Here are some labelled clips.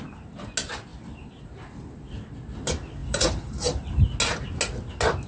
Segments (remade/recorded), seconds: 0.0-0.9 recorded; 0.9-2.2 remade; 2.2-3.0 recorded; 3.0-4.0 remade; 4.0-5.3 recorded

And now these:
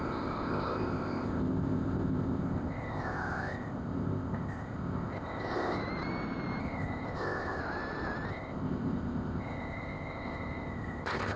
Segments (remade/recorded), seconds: 0.0-5.8 remade; 5.8-6.6 recorded; 6.6-7.6 remade; 7.6-8.3 recorded; 8.3-11.4 remade

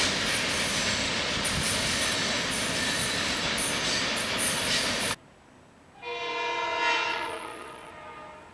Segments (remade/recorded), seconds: 0.0-7.1 recorded; 7.1-7.9 remade; 7.9-8.5 recorded

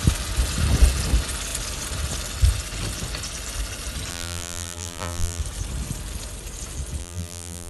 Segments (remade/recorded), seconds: 0.0-4.1 recorded; 4.1-5.4 remade; 5.4-7.0 recorded; 7.0-7.7 remade

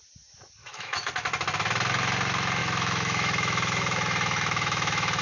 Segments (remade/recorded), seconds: 0.0-0.6 recorded; 0.6-1.1 remade; 1.1-2.6 recorded; 2.6-5.2 remade

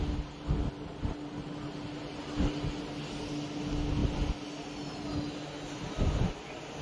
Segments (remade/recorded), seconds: 0.0-6.8 recorded

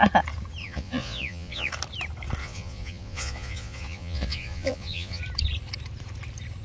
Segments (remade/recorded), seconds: 0.0-0.6 recorded; 0.6-1.7 remade; 1.7-2.4 recorded; 2.4-5.2 remade; 5.2-6.6 recorded

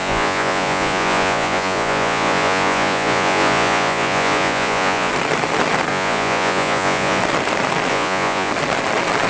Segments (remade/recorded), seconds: 0.0-5.1 remade; 5.1-5.9 recorded; 5.9-7.2 remade; 7.2-7.9 recorded; 7.9-8.5 remade; 8.5-9.3 recorded